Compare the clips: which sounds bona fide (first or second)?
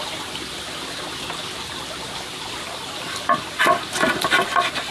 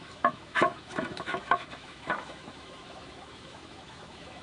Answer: first